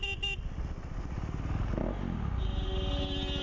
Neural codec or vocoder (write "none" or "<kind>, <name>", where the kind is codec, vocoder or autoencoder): none